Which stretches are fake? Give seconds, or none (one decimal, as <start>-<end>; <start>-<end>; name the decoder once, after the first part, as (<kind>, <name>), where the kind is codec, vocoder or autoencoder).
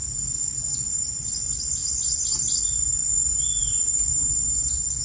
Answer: 0.0-4.1 (vocoder, BigVGAN v2)